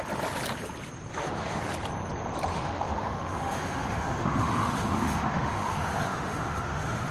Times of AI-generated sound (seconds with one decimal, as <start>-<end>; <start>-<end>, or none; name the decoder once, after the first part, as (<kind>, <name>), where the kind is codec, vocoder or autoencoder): 1.1-1.6 (autoencoder, DAC-VAE); 2.5-7.1